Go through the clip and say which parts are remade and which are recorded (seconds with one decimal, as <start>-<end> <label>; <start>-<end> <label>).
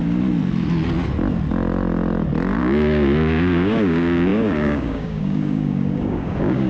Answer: 0.0-2.6 recorded; 2.6-6.7 remade